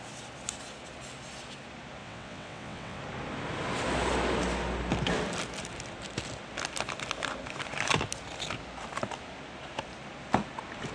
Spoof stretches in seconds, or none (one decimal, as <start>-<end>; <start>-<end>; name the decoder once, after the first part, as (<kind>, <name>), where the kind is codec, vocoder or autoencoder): 2.0-3.0 (vocoder, WaveNeXt)